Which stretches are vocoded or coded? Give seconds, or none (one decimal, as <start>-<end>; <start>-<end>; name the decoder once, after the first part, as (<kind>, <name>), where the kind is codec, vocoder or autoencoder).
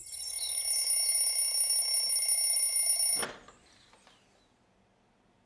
0.0-0.6 (vocoder, Vocos)